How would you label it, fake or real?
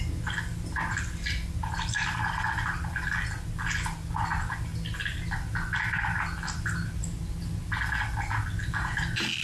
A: real